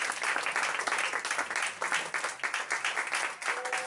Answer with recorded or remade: recorded